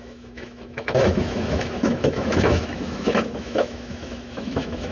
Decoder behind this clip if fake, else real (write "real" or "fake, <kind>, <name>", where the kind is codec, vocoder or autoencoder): fake, autoencoder, DAC-VAE